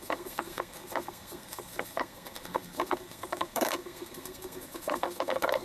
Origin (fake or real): fake